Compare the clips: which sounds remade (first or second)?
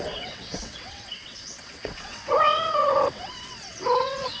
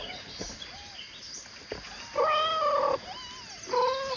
first